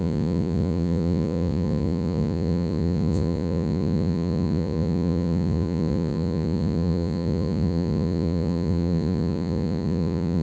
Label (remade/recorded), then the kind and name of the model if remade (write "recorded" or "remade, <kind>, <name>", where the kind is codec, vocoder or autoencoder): remade, vocoder, Vocos